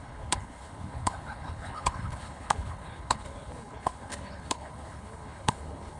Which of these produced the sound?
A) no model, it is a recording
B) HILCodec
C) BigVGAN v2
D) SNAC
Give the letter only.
B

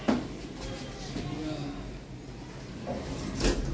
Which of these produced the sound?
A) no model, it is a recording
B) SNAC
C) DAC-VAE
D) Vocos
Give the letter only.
A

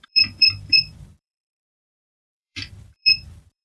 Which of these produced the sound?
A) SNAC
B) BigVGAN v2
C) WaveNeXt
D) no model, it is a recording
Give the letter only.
B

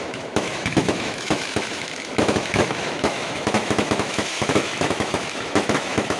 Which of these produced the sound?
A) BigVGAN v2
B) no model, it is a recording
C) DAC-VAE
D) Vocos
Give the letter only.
C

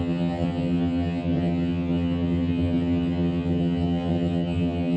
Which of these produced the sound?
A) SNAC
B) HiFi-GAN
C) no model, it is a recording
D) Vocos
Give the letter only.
B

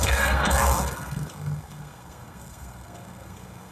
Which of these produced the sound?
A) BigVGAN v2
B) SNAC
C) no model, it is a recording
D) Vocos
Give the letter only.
B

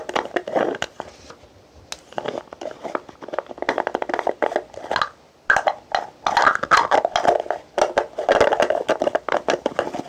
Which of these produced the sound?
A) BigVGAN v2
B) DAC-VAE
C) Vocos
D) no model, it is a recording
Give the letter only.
D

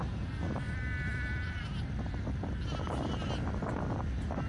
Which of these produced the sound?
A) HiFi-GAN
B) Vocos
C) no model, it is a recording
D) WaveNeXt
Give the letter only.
C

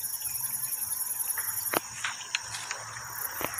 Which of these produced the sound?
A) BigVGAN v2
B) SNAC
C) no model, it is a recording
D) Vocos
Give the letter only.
C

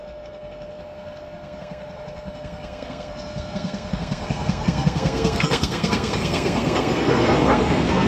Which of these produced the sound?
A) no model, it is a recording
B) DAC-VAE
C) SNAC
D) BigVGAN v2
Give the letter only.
C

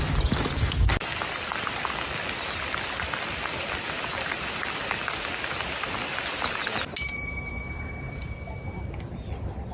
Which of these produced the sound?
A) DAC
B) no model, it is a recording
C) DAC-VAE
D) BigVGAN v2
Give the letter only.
B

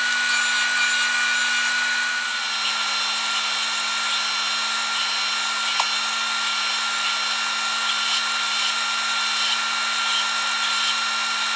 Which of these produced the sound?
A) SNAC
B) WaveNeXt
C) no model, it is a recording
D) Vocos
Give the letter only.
C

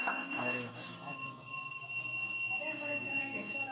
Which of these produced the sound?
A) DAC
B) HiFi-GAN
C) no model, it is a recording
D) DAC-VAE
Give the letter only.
A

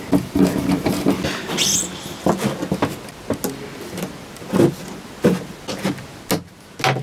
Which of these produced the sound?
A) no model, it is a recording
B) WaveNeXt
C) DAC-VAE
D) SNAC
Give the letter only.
A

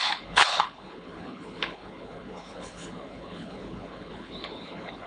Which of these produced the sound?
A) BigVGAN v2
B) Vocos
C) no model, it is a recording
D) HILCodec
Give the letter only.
D